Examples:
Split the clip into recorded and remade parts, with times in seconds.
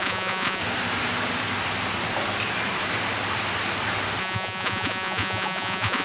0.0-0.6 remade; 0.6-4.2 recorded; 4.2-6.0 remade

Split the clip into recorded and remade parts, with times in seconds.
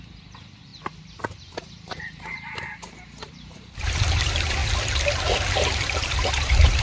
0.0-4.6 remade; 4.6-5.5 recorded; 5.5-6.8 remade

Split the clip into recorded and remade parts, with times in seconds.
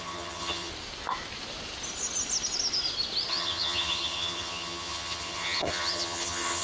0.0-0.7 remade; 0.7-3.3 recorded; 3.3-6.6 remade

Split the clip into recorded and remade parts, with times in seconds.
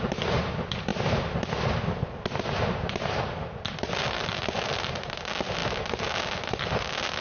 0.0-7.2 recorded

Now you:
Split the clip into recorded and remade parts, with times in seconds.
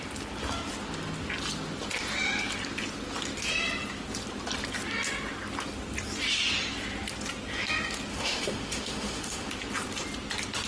0.0-8.1 recorded; 8.1-9.5 remade; 9.5-10.7 recorded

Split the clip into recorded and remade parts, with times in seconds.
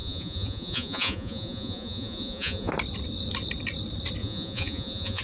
0.0-2.7 remade; 2.7-4.2 recorded; 4.2-5.2 remade